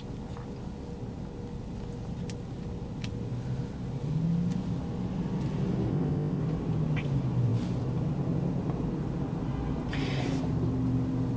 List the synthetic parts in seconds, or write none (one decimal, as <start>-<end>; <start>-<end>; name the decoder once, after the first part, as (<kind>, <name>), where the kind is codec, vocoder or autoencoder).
5.9-6.4 (codec, ZipCodec)